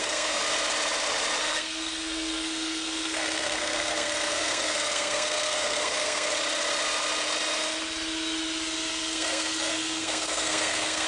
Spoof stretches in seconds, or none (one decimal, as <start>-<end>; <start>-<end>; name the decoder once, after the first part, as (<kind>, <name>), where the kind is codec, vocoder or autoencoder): 0.0-0.4 (codec, SNAC); 1.4-6.3; 8.9-11.1